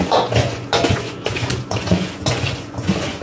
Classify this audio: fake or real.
fake